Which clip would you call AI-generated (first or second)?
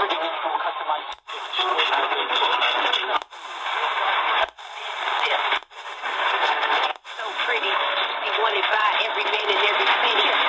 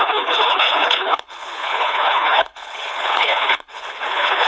second